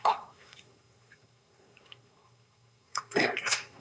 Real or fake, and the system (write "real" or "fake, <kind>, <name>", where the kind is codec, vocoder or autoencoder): fake, codec, SNAC